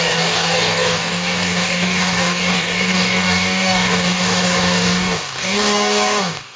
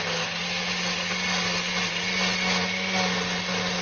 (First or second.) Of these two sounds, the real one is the second